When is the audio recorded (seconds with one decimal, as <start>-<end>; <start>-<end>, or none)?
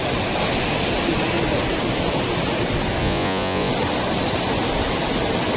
0.0-3.0; 3.7-5.6